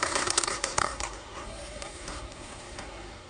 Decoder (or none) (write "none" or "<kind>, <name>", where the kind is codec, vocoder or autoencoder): codec, SNAC